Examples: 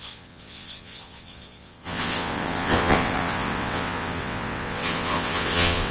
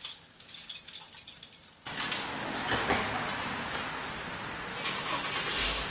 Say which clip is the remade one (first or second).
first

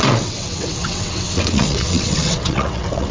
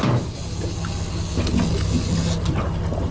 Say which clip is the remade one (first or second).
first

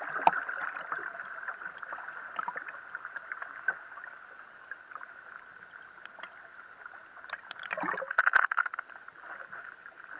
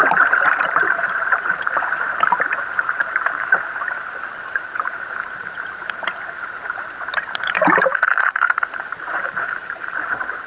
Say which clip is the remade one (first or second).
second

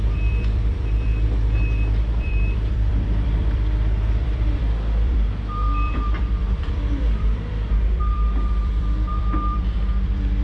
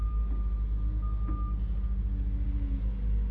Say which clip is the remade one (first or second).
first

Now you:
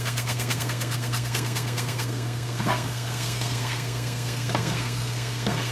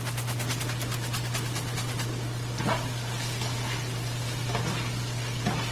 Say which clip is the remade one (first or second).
first